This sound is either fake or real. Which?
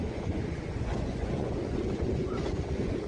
fake